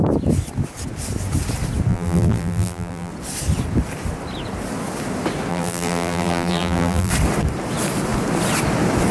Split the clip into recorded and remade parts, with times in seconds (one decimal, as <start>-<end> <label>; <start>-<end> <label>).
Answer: 0.0-1.9 recorded; 1.9-3.1 remade; 3.1-5.5 recorded; 5.5-7.1 remade; 7.1-9.1 recorded